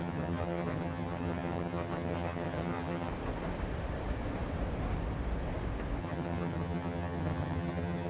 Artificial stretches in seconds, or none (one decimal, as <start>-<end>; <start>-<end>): 0.0-3.1; 6.0-8.1